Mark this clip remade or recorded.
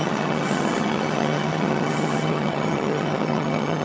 remade